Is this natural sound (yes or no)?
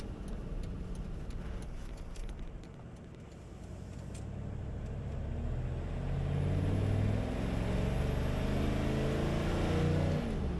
yes